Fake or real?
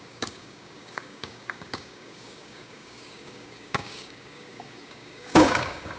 fake